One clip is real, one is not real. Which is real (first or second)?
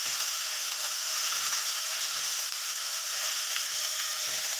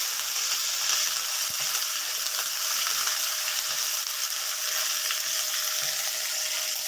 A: second